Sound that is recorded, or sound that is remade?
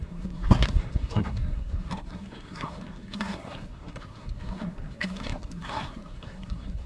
remade